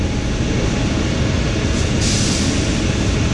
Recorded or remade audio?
recorded